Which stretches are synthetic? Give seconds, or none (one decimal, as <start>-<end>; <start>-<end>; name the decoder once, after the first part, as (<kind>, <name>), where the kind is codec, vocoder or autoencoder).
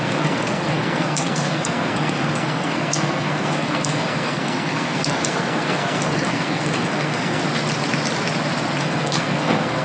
0.0-7.4 (codec, SNAC); 8.8-9.8